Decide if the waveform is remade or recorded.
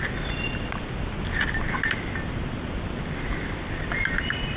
remade